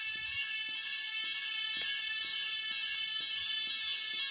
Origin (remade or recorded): recorded